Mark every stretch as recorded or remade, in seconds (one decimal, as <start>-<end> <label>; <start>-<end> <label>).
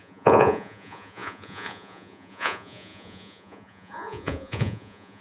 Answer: 0.0-5.2 remade